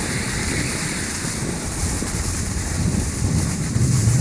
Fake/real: real